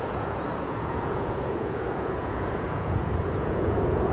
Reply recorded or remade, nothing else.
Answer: remade